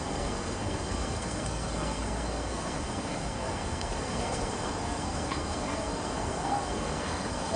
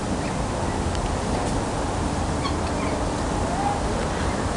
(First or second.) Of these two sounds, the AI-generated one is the first